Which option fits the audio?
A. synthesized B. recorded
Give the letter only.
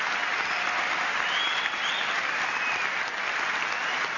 B